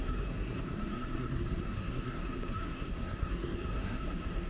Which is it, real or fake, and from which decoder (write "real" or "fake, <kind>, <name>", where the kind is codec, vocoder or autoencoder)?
fake, codec, SNAC